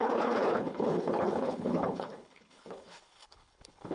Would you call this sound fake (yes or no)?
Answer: yes